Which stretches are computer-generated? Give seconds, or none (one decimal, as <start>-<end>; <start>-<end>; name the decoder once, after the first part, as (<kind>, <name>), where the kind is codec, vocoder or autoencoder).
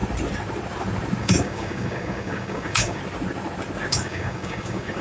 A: 1.2-3.0 (codec, DAC); 3.9-5.0